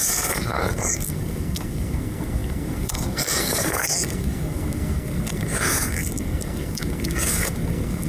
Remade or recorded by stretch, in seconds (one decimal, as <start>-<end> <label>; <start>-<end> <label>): 0.0-8.1 remade